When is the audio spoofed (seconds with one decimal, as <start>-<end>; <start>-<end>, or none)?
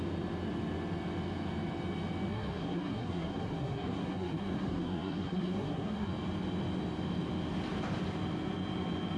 2.3-6.1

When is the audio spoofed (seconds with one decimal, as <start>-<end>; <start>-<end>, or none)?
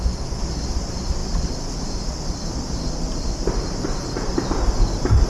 1.2-4.4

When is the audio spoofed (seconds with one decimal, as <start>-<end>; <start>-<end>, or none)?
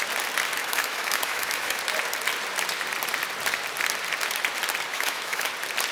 0.6-1.8; 4.9-5.5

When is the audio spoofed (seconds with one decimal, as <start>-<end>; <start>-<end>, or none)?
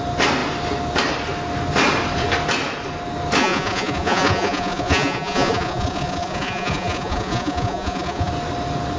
3.4-8.3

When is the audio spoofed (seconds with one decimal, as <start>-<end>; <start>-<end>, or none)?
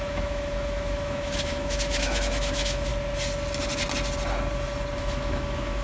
0.0-2.9; 5.0-5.8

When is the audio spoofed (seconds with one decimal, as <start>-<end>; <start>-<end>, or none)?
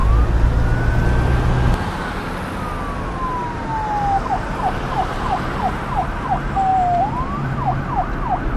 6.7-7.8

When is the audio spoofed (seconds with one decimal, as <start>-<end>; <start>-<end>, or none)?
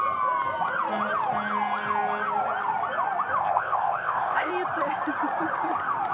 3.4-4.5